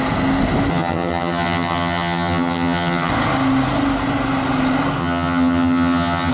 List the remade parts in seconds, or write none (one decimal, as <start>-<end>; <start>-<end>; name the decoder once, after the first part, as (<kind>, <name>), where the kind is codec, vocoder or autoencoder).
0.7-3.1 (vocoder, HiFi-GAN); 5.0-6.3